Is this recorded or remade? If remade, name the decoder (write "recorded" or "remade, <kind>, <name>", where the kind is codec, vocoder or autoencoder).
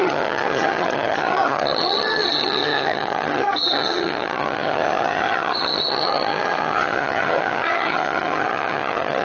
remade, vocoder, HiFi-GAN